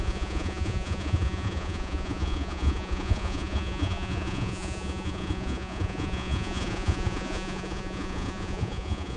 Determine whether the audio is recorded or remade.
remade